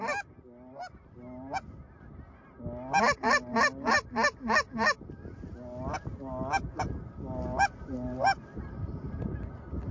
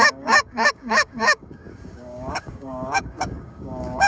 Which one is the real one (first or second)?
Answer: first